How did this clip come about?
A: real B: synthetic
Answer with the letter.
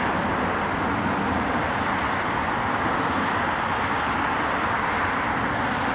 A